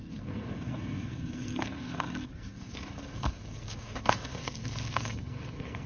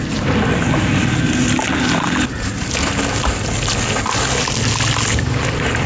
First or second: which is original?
second